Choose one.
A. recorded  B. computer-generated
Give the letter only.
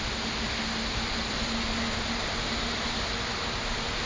A